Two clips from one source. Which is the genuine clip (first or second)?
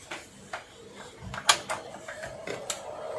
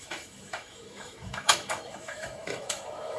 first